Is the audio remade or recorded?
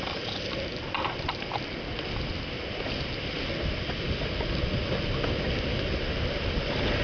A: recorded